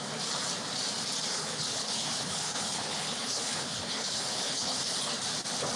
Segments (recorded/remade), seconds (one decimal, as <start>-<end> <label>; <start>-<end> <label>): 0.0-1.3 recorded; 1.3-4.8 remade; 4.8-5.8 recorded